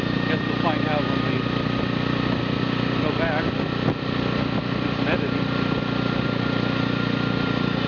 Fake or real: real